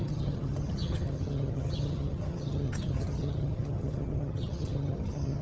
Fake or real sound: fake